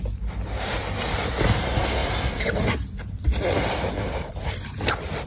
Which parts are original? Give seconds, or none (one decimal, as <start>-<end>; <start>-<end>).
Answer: 0.0-2.0